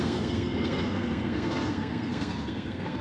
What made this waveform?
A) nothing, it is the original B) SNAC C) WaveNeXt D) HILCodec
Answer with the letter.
B